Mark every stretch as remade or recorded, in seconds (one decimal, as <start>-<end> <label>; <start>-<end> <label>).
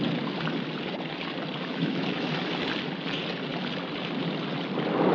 0.0-1.7 recorded; 1.7-2.3 remade; 2.3-5.1 recorded